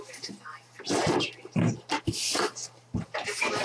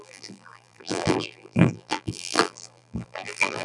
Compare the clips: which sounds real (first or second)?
first